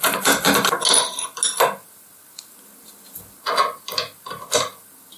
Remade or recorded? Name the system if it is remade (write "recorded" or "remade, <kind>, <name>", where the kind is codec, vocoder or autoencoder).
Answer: recorded